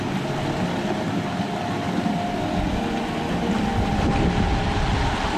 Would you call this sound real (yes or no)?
yes